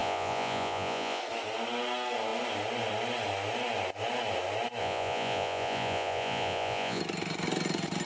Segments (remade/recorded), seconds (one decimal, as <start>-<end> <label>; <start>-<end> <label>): 0.0-1.2 remade; 1.2-4.8 recorded; 4.8-7.0 remade; 7.0-8.0 recorded